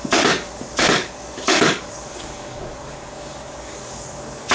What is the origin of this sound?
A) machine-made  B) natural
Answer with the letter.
A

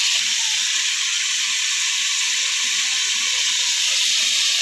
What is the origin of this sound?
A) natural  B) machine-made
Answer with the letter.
B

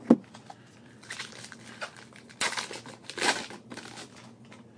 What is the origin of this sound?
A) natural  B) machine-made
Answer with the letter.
A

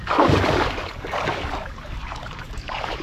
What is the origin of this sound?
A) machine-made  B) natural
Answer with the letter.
A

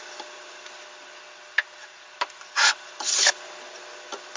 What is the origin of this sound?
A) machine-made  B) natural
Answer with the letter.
B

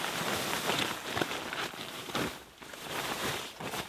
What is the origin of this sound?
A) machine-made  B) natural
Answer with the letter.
B